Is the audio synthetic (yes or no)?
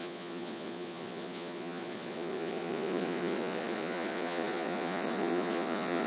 yes